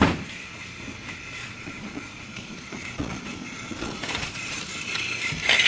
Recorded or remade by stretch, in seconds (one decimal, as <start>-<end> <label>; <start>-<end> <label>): 0.0-1.4 recorded; 1.4-4.6 remade; 4.6-5.7 recorded